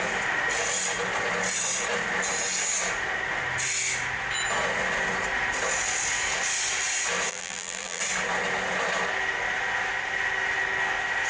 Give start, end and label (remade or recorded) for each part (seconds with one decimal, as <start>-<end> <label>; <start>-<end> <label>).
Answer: 0.0-7.3 recorded; 7.3-8.0 remade; 8.0-11.3 recorded